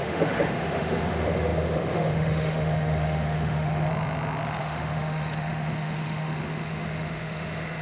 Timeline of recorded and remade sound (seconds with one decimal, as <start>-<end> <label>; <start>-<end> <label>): 0.0-3.9 remade; 3.9-4.6 recorded; 4.6-7.8 remade